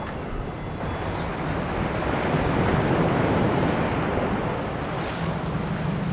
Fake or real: real